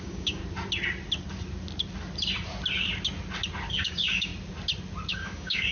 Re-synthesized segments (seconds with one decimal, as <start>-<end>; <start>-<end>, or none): 0.0-0.4; 3.7-4.3; 5.1-5.7